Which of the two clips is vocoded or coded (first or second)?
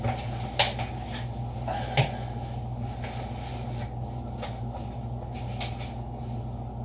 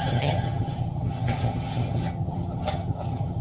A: second